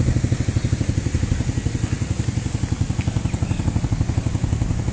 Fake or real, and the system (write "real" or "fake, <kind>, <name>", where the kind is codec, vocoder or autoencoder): real